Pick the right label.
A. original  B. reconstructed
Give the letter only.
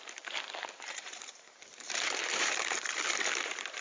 B